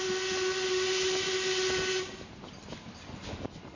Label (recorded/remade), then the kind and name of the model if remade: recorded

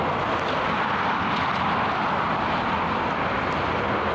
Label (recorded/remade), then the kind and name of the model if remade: recorded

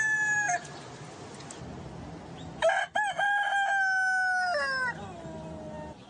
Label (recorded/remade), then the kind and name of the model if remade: recorded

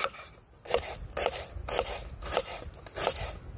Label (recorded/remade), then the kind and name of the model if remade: recorded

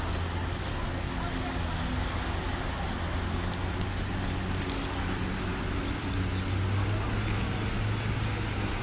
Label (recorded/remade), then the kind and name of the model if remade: recorded